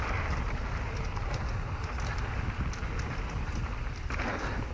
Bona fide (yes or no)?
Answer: yes